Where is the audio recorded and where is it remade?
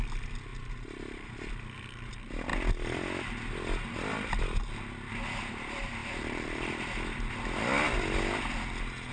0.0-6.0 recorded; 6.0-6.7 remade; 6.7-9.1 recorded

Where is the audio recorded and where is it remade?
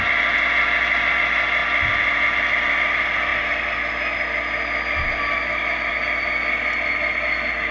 0.0-7.7 recorded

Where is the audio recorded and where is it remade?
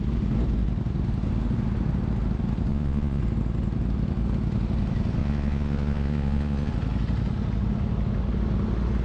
0.0-2.7 recorded; 2.7-3.2 remade; 3.2-5.2 recorded; 5.2-6.7 remade; 6.7-9.0 recorded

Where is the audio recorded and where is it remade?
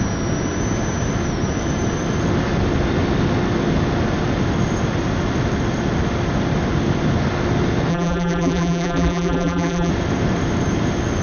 0.0-7.9 recorded; 7.9-9.9 remade; 9.9-11.2 recorded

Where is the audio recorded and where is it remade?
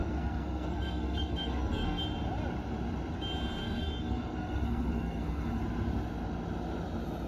0.0-2.0 remade; 2.0-3.6 recorded; 3.6-5.6 remade; 5.6-7.3 recorded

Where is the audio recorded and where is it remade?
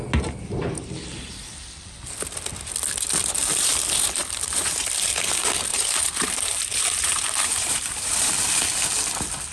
0.0-4.2 recorded; 4.2-4.9 remade; 4.9-5.7 recorded; 5.7-8.3 remade; 8.3-9.5 recorded